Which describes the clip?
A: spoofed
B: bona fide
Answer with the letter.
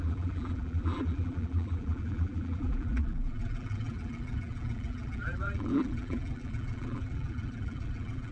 A